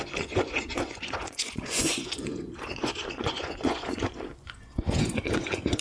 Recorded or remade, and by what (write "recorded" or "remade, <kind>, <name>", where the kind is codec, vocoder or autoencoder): remade, vocoder, Vocos